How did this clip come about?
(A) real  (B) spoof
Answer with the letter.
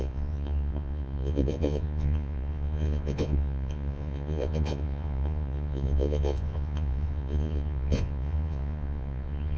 B